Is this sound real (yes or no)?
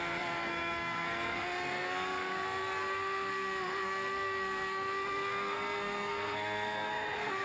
no